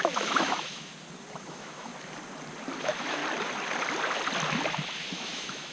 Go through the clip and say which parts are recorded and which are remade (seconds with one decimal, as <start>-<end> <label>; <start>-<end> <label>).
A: 0.0-0.9 remade; 0.9-1.5 recorded; 1.5-1.9 remade; 1.9-2.8 recorded; 2.8-3.2 remade; 3.2-5.1 recorded; 5.1-5.7 remade